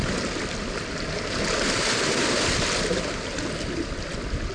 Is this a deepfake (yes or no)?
no